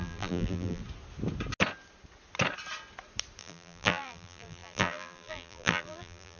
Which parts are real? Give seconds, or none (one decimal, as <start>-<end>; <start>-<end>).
0.8-3.4